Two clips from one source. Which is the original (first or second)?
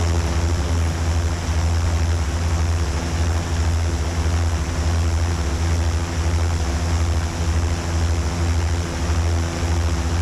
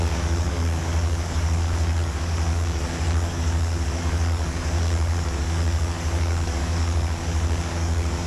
first